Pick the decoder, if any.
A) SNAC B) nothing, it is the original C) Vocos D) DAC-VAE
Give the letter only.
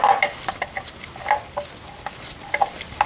B